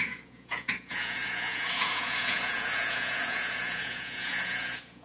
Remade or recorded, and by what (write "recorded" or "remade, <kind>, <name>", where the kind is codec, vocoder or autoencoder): remade, vocoder, Vocos